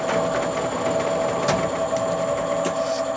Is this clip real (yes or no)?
yes